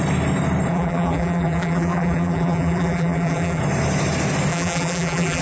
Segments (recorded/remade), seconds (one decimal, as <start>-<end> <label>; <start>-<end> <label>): 0.0-0.7 recorded; 0.7-3.6 remade; 3.6-4.5 recorded; 4.5-5.4 remade